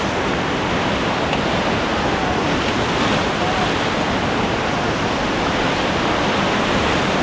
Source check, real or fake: real